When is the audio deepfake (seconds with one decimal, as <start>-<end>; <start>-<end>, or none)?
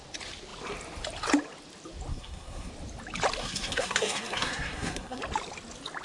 2.1-2.7; 3.4-5.2